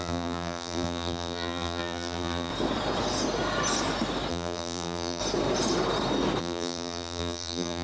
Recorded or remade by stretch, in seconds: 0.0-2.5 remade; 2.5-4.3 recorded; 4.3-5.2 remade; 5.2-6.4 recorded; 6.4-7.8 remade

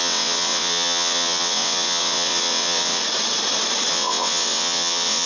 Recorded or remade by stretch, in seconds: 0.0-3.0 remade; 3.0-3.9 recorded; 3.9-5.3 remade